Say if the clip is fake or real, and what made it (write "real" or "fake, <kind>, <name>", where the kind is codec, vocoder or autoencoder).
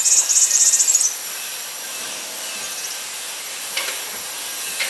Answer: real